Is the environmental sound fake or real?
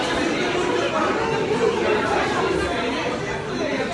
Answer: real